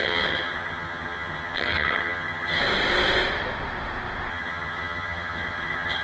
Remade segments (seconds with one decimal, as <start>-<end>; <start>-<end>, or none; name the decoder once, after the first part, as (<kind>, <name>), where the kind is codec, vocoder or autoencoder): 0.0-2.6 (vocoder, HiFi-GAN); 4.3-6.0